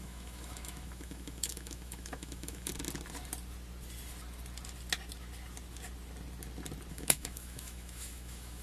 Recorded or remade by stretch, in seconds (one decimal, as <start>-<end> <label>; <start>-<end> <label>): 0.0-2.7 remade; 2.7-6.9 recorded; 6.9-8.6 remade